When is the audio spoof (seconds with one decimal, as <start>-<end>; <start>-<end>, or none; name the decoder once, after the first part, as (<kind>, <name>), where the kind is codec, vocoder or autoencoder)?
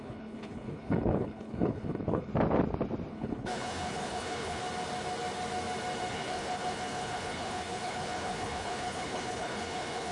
0.0-2.3 (codec, HILCodec); 3.1-4.6; 6.1-10.1